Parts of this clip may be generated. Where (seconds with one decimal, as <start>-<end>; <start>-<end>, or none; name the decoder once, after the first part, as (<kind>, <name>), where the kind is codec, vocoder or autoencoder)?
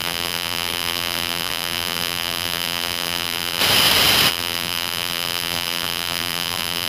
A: 0.0-3.6 (vocoder, BigVGAN v2); 4.3-6.9